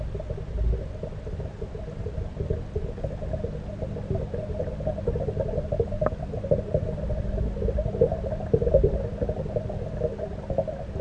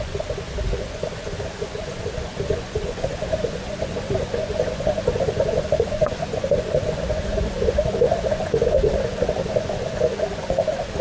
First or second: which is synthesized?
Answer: second